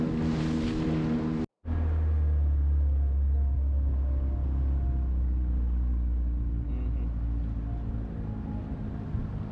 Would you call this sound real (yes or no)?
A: yes